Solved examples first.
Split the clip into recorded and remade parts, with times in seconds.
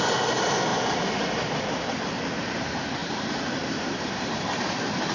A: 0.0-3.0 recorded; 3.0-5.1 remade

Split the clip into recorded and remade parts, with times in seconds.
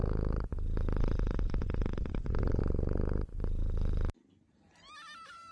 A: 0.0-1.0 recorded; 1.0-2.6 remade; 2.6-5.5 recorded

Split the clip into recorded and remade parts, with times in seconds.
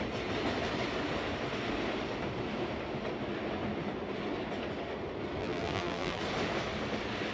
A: 0.0-5.4 recorded; 5.4-6.2 remade; 6.2-7.3 recorded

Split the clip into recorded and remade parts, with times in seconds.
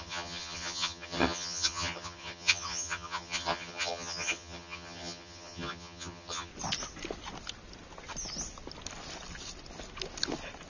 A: 0.0-6.5 remade; 6.5-10.7 recorded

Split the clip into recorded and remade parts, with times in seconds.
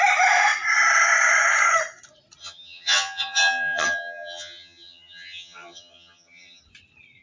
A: 0.0-2.4 recorded; 2.4-6.6 remade; 6.6-7.2 recorded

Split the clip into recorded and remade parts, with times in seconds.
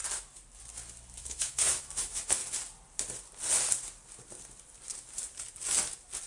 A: 0.0-1.2 recorded; 1.2-2.4 remade; 2.4-6.3 recorded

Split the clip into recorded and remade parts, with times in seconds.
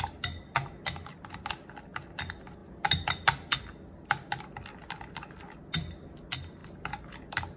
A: 0.0-7.6 recorded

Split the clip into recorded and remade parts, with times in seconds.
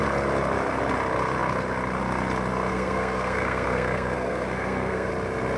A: 0.0-2.7 recorded; 2.7-5.1 remade; 5.1-5.6 recorded